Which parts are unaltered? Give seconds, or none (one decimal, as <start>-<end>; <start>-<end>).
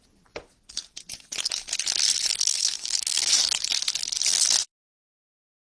0.0-2.5; 3.3-5.7